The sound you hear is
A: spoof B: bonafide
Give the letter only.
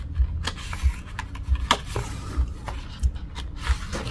B